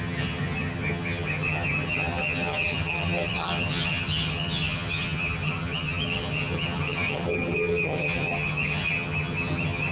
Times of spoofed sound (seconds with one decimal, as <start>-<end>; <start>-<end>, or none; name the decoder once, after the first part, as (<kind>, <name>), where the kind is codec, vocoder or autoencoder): 0.0-9.9 (vocoder, HiFi-GAN)